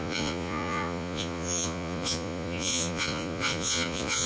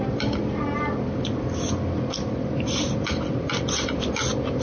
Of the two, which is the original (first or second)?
second